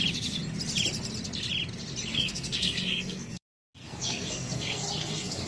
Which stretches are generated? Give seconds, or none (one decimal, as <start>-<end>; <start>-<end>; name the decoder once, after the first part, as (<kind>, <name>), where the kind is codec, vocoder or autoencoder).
2.1-5.5 (codec, SNAC)